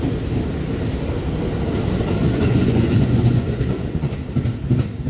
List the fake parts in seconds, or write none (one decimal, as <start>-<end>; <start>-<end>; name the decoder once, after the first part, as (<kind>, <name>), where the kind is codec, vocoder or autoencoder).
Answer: 2.2-4.2 (vocoder, Vocos)